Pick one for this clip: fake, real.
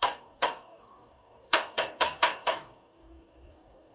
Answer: fake